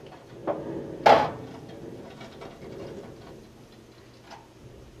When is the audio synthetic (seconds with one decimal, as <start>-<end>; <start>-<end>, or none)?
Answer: none